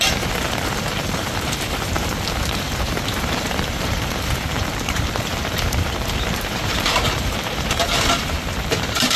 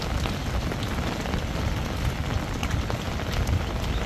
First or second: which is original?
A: second